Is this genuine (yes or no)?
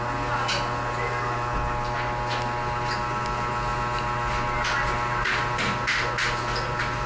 yes